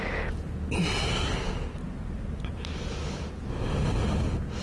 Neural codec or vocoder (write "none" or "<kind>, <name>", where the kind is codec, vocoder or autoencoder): none